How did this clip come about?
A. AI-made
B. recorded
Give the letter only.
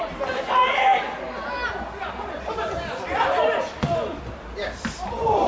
B